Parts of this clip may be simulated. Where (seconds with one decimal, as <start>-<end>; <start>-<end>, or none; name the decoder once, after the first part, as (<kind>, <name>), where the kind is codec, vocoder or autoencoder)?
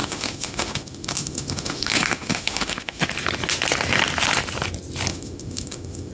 0.0-3.0 (autoencoder, DAC-VAE); 5.1-6.1